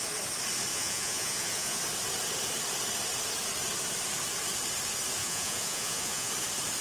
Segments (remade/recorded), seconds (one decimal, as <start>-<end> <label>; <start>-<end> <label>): 0.0-0.7 recorded; 0.7-1.8 remade; 1.8-5.2 recorded; 5.2-6.3 remade; 6.3-6.8 recorded